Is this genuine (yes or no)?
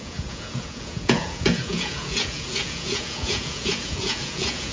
no